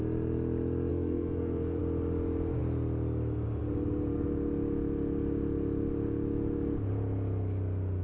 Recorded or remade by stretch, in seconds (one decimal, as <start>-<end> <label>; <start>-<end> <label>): 0.0-0.9 recorded; 0.9-1.8 remade; 1.8-8.0 recorded